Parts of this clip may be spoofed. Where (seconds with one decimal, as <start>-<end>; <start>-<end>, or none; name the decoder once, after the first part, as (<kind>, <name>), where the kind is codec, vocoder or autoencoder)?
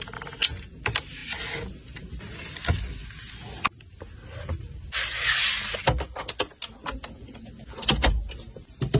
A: none